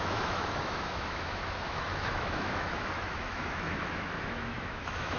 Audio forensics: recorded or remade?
remade